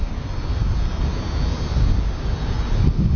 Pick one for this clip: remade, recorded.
recorded